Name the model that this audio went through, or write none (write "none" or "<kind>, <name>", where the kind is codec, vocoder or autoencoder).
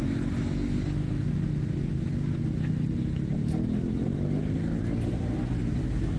none